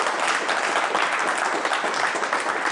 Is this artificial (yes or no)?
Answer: no